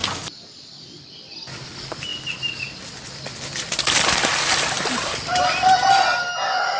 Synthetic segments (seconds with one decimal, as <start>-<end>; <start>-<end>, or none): none